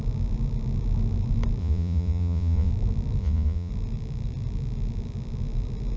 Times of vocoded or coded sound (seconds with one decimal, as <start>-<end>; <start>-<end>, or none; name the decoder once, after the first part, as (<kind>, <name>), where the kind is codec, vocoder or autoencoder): 1.6-2.7 (vocoder, Vocos); 3.2-3.7